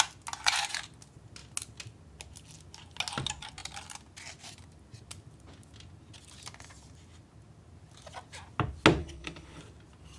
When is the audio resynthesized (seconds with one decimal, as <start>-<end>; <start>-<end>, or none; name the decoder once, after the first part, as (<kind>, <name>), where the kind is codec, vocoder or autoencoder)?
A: 9.0-9.6 (codec, HILCodec)